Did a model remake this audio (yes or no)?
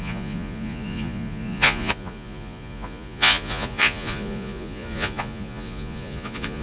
yes